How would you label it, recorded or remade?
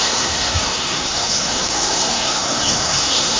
remade